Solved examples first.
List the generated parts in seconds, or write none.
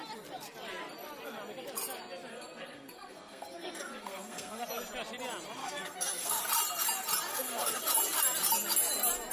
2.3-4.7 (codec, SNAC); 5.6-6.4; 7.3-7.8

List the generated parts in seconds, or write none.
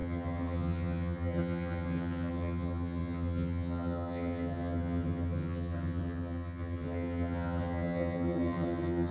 0.0-9.1 (vocoder, HiFi-GAN)